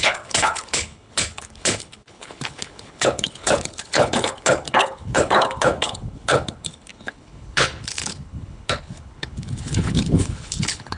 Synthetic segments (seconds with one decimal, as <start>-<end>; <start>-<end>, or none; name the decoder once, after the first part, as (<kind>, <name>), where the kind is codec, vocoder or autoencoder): 0.0-11.0 (codec, HILCodec)